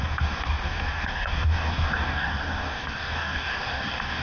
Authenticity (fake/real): fake